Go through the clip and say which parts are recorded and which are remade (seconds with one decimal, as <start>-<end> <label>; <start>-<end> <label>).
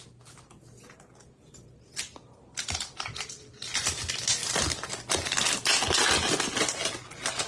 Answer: 0.0-7.5 recorded